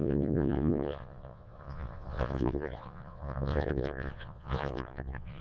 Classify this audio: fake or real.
fake